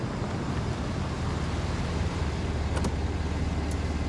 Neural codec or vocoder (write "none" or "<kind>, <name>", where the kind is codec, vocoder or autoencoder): none